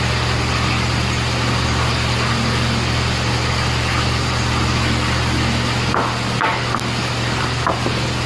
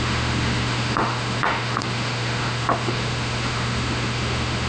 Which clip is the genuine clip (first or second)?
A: first